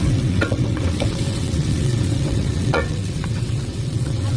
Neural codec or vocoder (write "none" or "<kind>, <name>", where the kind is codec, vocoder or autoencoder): vocoder, WaveNeXt